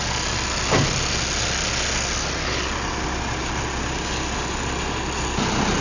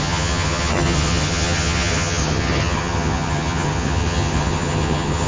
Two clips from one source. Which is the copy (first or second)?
second